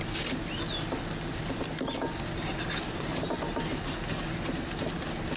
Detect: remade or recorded recorded